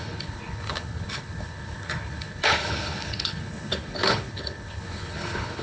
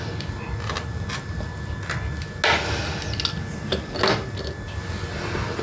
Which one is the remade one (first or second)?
first